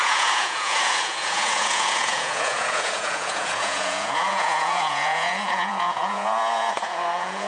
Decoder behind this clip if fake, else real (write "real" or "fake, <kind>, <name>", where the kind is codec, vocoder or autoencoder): fake, vocoder, Vocos